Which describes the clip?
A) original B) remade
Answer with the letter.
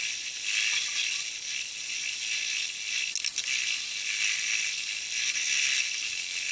A